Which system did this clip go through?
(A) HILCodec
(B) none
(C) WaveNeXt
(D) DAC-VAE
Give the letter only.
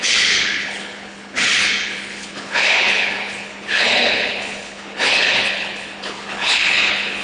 A